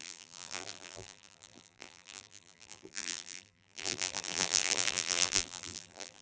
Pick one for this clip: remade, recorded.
remade